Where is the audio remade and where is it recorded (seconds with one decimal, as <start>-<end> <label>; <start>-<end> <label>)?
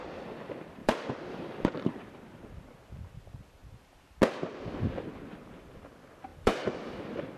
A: 0.0-0.8 recorded; 0.8-2.1 remade; 2.1-6.3 recorded; 6.3-7.0 remade; 7.0-7.4 recorded